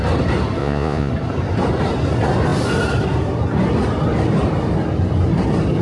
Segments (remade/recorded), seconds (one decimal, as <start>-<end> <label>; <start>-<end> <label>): 0.0-0.6 recorded; 0.6-1.1 remade; 1.1-5.8 recorded